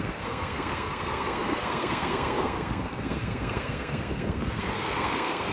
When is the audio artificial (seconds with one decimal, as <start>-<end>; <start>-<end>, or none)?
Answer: 0.0-5.5